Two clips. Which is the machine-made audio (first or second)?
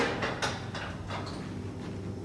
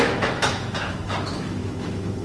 second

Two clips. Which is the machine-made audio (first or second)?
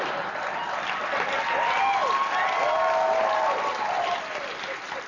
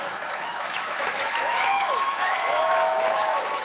second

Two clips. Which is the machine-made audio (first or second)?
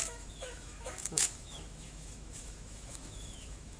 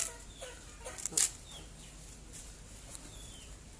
first